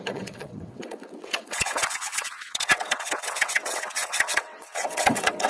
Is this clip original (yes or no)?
no